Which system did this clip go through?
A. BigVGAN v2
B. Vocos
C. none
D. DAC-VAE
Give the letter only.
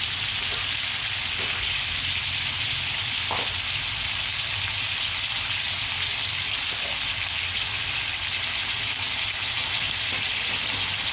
C